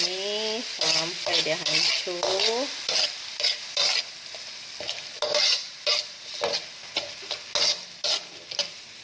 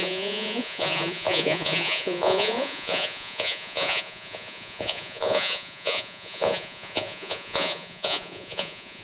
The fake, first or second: second